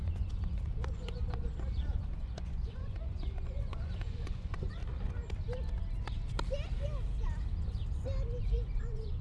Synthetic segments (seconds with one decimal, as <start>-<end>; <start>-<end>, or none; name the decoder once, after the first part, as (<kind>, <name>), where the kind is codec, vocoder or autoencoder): 0.0-4.8 (vocoder, Vocos); 8.4-9.2

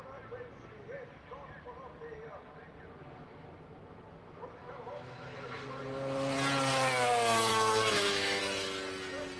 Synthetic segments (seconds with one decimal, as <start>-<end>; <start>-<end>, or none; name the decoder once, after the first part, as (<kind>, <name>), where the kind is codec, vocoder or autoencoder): 4.6-5.8 (autoencoder, DAC-VAE); 7.5-8.4